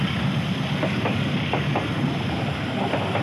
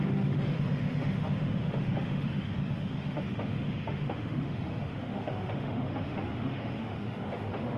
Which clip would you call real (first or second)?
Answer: first